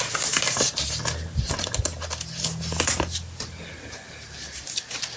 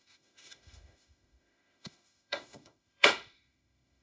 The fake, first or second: second